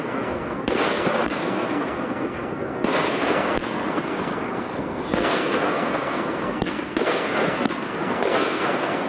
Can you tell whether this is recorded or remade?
remade